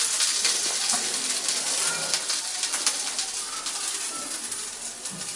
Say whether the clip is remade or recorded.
recorded